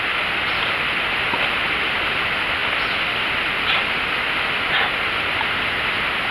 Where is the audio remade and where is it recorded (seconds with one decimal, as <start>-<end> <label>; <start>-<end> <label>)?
0.0-6.3 recorded